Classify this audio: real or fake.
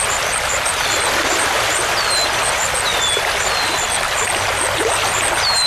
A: real